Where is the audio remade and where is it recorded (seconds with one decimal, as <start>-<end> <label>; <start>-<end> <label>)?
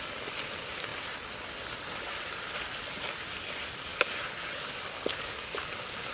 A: 0.0-3.9 recorded; 3.9-6.1 remade